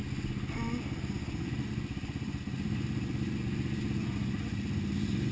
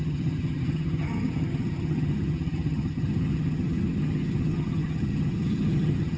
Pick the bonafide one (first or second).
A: first